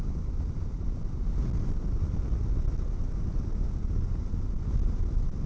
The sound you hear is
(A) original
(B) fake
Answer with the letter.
A